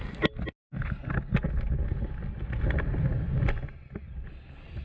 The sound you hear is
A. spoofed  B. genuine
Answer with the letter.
B